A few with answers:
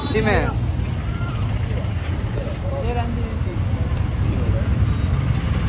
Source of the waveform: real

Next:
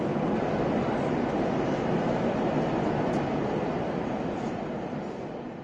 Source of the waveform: real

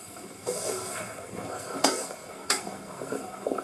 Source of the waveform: fake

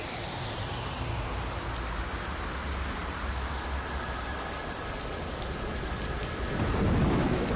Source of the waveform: real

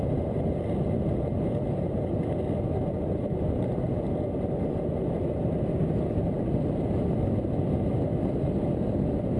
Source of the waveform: real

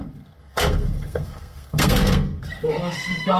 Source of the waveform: fake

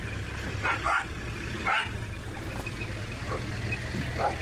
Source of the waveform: real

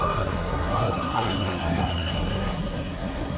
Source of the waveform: fake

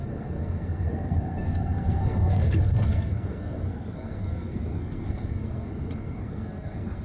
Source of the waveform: fake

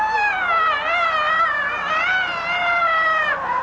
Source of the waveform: real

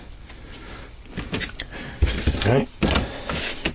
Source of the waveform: real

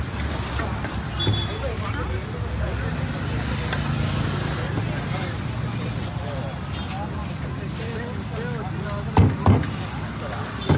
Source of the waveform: real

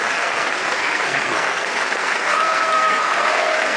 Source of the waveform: fake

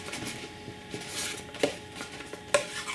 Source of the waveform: real